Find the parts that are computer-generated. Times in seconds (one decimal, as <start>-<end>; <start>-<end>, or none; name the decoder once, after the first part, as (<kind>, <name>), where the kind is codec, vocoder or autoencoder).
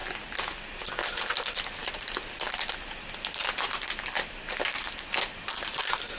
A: 1.8-4.9 (vocoder, BigVGAN v2)